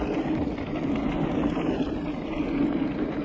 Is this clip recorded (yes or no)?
yes